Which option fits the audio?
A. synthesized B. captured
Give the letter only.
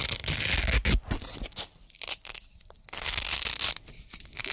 B